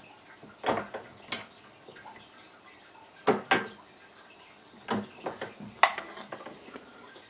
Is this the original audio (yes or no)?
yes